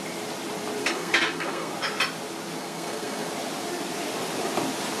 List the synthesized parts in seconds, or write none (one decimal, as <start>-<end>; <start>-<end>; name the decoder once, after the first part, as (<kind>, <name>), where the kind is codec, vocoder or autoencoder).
0.8-1.7 (codec, SNAC); 2.6-3.3